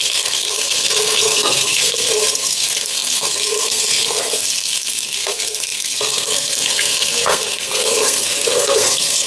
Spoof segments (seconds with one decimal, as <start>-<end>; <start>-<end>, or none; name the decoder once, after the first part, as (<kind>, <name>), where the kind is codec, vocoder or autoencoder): 0.0-9.3 (codec, SNAC)